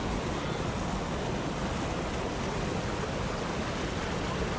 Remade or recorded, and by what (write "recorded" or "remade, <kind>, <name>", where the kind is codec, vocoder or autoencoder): recorded